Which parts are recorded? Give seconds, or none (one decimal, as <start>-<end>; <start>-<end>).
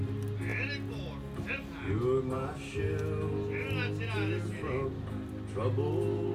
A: 0.0-6.3